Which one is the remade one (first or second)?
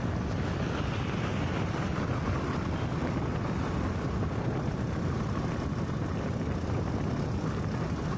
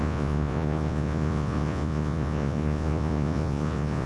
second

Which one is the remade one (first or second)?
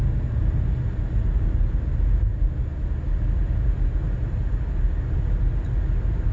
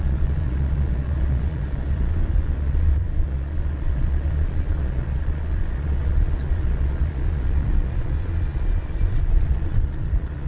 second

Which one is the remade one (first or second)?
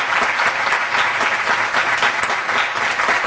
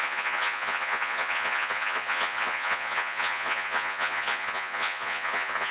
second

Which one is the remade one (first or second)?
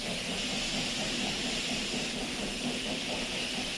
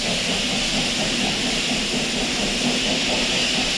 first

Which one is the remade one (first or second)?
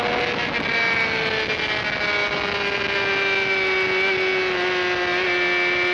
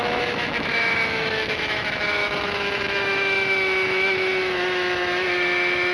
second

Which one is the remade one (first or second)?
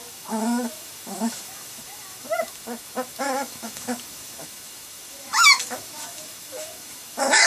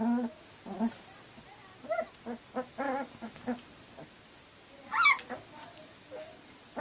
first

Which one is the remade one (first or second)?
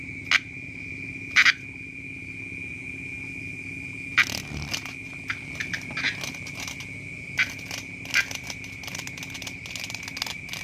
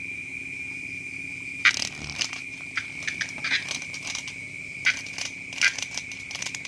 second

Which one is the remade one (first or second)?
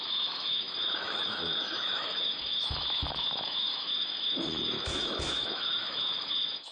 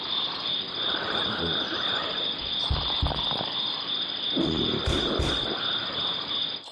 first